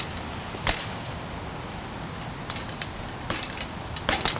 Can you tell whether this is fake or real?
real